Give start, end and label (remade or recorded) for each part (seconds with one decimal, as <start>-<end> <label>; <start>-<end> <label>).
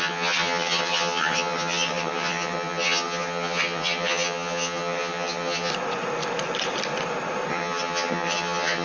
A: 0.0-5.7 remade; 5.7-7.5 recorded; 7.5-8.8 remade